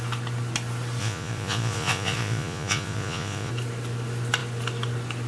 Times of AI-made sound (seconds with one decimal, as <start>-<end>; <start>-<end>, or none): 1.0-3.5